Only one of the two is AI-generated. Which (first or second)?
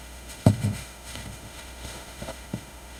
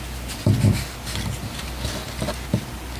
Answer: first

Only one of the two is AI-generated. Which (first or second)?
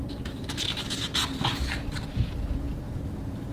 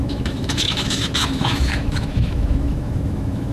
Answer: second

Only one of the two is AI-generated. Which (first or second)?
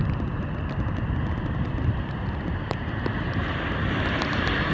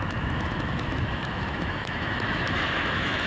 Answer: second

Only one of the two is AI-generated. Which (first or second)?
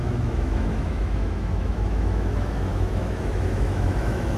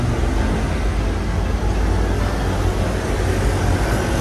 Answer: first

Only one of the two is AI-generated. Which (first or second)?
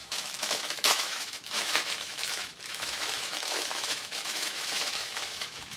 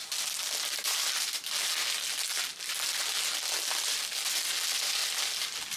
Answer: first